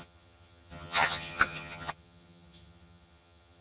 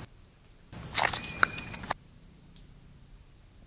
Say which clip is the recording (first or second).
second